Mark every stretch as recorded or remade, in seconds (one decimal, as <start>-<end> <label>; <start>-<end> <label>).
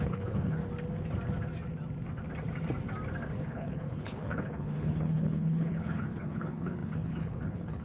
0.0-0.6 remade; 0.6-3.4 recorded; 3.4-7.8 remade